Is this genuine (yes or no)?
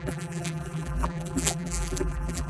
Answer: no